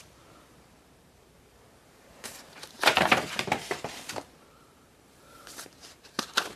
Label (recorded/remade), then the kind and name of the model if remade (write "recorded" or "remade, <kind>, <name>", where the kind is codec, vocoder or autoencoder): remade, vocoder, BigVGAN v2